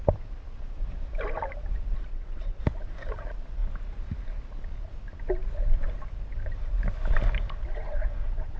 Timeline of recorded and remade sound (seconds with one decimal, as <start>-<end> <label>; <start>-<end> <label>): 0.0-2.1 recorded; 2.1-2.6 remade; 2.6-7.7 recorded; 7.7-8.6 remade